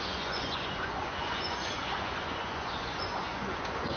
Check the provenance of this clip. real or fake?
fake